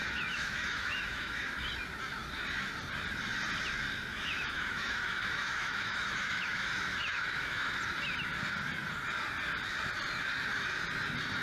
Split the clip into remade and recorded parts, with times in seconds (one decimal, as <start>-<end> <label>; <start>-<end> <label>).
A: 0.0-1.7 remade; 1.7-4.1 recorded; 4.1-7.7 remade; 7.7-11.4 recorded